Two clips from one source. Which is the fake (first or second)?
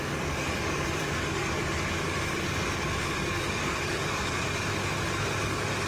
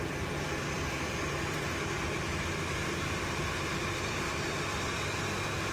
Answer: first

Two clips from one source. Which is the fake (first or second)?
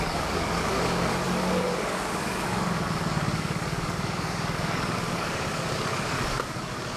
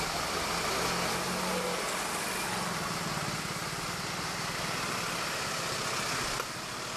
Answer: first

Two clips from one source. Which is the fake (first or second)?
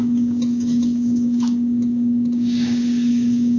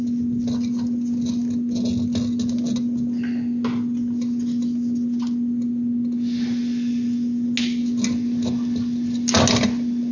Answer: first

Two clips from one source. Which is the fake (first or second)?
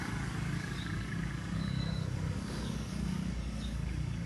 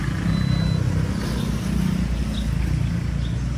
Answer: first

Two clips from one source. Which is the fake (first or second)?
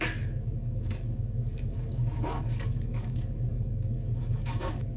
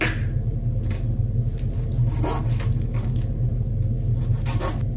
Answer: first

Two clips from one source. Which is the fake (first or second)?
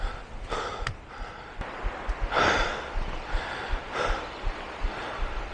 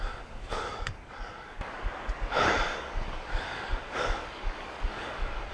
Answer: second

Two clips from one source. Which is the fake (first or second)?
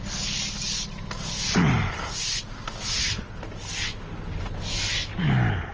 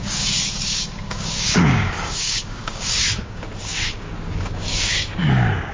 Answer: second